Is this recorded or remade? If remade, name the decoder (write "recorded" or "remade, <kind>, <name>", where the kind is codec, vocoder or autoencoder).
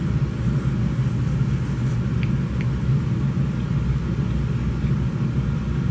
recorded